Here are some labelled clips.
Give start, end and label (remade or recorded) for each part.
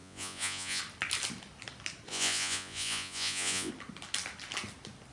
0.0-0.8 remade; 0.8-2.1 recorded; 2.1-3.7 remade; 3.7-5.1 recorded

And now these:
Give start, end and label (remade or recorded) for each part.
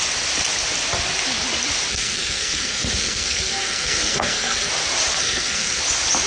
0.0-1.9 recorded; 1.9-4.7 remade; 4.7-5.2 recorded; 5.2-5.8 remade; 5.8-6.3 recorded